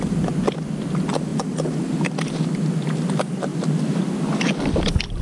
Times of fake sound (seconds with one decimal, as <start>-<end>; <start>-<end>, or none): none